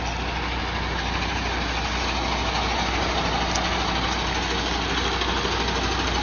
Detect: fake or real real